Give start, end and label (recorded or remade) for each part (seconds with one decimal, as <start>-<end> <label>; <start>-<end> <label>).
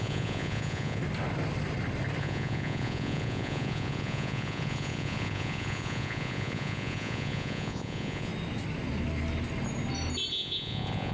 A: 0.0-1.0 remade; 1.0-2.2 recorded; 2.2-8.3 remade; 8.3-10.3 recorded; 10.3-11.1 remade